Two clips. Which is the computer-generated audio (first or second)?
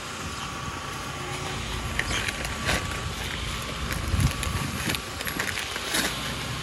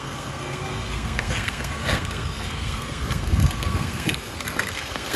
second